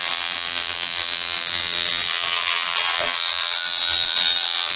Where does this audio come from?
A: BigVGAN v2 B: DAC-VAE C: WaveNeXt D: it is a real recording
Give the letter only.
A